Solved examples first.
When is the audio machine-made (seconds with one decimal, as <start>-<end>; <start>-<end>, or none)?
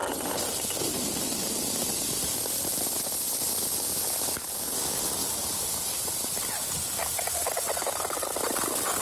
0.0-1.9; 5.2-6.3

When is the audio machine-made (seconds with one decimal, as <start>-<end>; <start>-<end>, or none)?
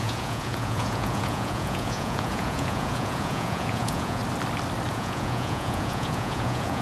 0.0-4.2; 4.9-6.8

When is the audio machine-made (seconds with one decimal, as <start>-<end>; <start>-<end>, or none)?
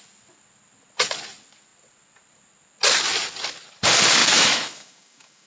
4.2-5.5